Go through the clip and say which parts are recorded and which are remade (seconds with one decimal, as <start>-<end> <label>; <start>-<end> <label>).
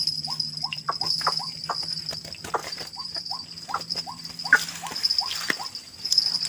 0.0-2.6 recorded; 2.6-3.3 remade; 3.3-6.5 recorded